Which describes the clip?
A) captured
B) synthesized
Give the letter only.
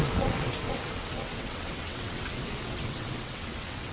B